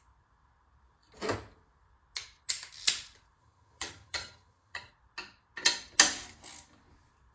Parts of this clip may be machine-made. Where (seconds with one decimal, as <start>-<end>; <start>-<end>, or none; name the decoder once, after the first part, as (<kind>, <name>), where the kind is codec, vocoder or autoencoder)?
3.4-4.9 (vocoder, HiFi-GAN)